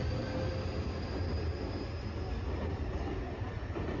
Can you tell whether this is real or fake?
real